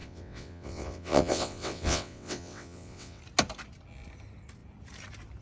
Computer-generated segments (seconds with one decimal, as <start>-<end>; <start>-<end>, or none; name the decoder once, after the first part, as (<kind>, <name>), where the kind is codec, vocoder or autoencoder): 0.0-3.2 (vocoder, WaveNeXt)